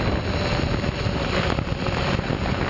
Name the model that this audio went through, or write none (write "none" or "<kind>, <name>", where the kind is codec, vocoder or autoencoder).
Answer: none